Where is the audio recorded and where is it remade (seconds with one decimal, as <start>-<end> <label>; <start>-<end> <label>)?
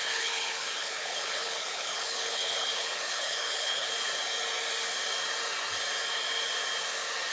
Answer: 0.0-3.9 remade; 3.9-7.3 recorded